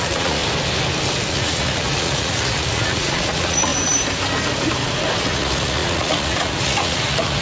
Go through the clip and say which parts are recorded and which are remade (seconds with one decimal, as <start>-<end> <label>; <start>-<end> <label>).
0.0-0.4 remade; 0.4-1.3 recorded; 1.3-3.7 remade; 3.7-5.2 recorded; 5.2-7.4 remade